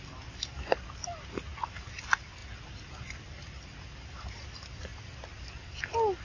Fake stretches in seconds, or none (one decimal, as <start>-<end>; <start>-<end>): none